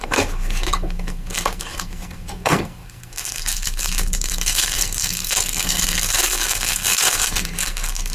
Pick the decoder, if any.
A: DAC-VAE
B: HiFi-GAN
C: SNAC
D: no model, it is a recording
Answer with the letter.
C